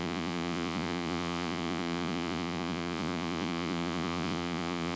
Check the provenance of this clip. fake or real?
fake